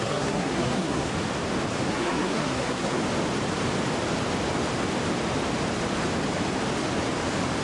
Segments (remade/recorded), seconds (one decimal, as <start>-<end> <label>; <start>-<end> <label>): 0.0-1.1 remade; 1.1-1.9 recorded; 1.9-3.0 remade; 3.0-7.6 recorded